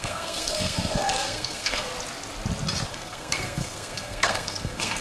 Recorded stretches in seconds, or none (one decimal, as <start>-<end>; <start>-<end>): 1.9-2.9